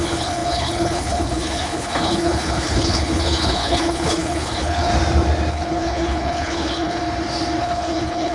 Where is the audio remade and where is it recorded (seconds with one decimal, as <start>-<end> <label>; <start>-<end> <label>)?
0.0-4.9 remade; 4.9-5.5 recorded; 5.5-7.0 remade; 7.0-7.6 recorded; 7.6-8.3 remade